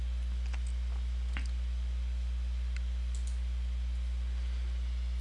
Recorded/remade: recorded